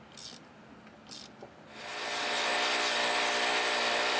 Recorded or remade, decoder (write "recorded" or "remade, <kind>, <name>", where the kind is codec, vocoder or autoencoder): recorded